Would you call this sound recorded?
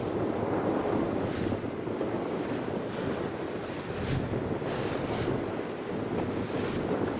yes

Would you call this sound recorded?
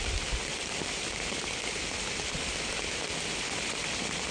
yes